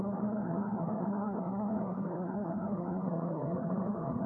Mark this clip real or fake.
fake